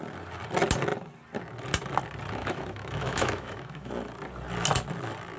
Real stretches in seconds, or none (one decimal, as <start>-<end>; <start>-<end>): 0.0-2.4; 3.9-5.4